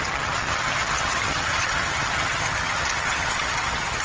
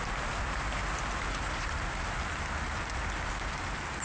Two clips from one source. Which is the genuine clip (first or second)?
second